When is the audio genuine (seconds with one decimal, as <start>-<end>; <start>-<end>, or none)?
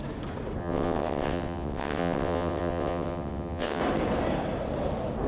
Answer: 0.0-0.6; 3.8-5.3